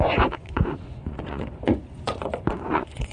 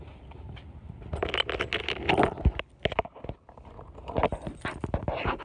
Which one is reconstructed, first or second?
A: first